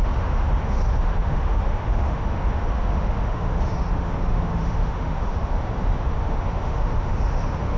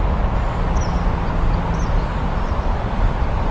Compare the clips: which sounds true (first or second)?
second